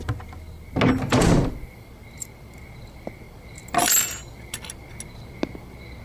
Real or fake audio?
real